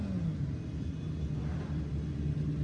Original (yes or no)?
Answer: yes